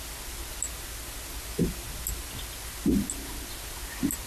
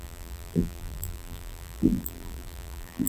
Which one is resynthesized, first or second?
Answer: second